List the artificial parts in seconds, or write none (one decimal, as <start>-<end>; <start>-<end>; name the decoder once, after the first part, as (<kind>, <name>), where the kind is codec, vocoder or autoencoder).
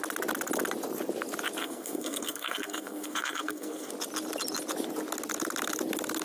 1.6-3.9 (codec, SNAC)